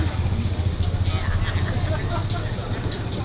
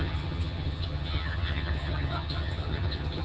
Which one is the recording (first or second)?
first